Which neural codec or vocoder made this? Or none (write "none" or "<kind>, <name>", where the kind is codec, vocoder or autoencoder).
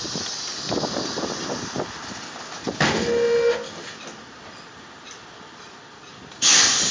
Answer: none